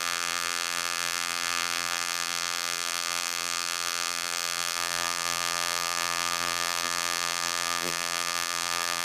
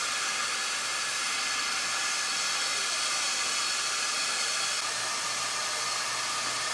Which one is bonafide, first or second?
second